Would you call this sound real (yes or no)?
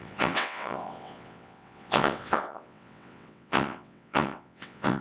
no